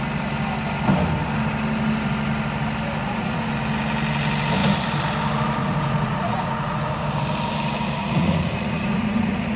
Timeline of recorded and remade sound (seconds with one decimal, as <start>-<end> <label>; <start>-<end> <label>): 0.0-3.0 recorded; 3.0-3.5 remade; 3.5-5.6 recorded; 5.6-6.8 remade; 6.8-8.0 recorded; 8.0-9.6 remade